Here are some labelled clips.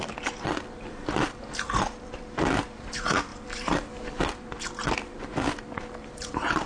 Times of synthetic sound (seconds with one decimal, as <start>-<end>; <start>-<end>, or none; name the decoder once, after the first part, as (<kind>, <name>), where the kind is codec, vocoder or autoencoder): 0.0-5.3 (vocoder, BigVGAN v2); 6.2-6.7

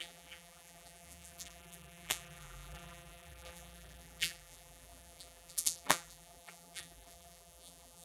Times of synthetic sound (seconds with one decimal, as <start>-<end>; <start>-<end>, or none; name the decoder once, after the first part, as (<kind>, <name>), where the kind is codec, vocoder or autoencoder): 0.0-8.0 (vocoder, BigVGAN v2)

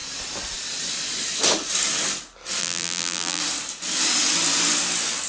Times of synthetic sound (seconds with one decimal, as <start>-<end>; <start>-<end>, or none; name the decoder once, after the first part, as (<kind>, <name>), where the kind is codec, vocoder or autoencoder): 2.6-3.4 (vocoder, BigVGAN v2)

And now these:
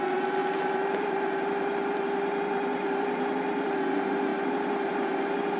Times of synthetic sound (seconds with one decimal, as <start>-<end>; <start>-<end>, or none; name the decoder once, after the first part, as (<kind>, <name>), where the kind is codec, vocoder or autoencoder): 0.4-3.8 (vocoder, BigVGAN v2)

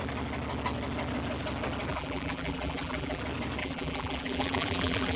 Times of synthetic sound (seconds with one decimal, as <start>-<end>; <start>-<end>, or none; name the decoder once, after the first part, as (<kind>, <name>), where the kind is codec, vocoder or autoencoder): 1.9-3.2 (vocoder, BigVGAN v2); 3.6-5.2